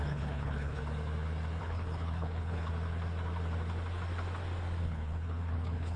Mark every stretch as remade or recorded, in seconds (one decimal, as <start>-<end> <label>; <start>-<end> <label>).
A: 0.0-0.8 remade; 0.8-1.6 recorded; 1.6-2.7 remade; 2.7-4.8 recorded; 4.8-6.0 remade